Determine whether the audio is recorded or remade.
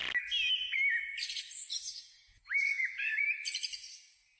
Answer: recorded